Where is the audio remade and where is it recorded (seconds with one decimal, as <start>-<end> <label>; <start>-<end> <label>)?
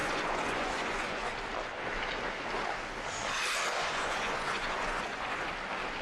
0.0-1.3 remade; 1.3-3.7 recorded; 3.7-5.5 remade; 5.5-6.0 recorded